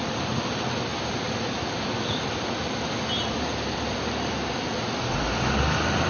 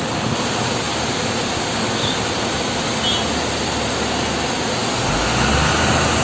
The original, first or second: second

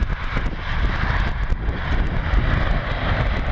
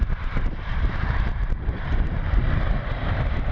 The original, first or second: first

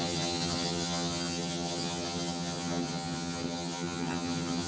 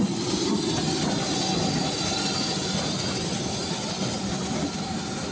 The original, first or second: second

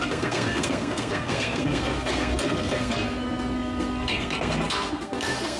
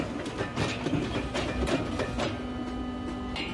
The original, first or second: second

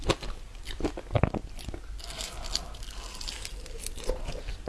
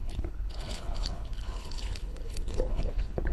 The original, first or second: first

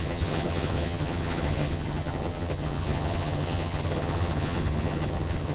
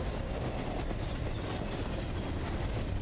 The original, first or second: second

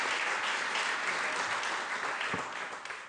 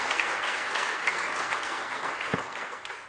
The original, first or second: first